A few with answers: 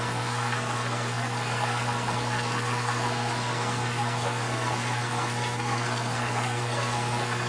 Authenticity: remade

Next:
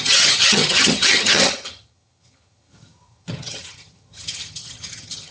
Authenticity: remade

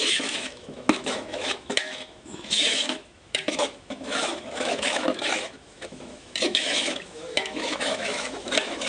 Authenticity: remade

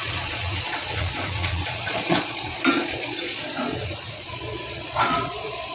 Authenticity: remade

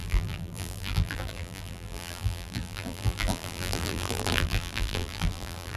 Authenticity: remade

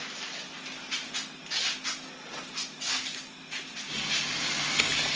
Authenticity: recorded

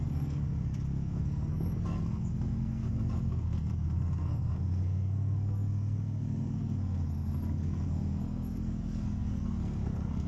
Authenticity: remade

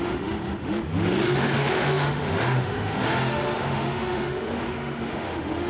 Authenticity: remade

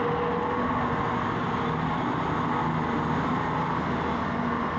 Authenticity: recorded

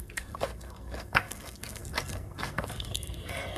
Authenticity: remade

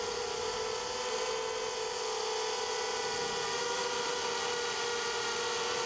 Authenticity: recorded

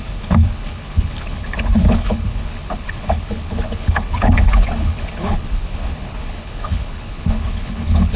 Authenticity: remade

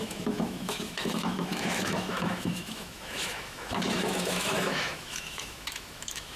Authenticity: remade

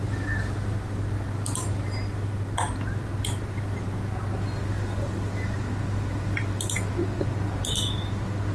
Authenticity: recorded